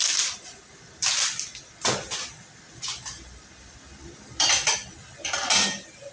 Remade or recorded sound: recorded